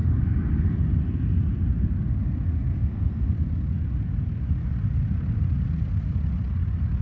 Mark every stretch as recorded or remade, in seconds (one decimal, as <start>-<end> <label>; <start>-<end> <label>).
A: 0.0-0.6 remade; 0.6-2.7 recorded; 2.7-3.3 remade; 3.3-7.0 recorded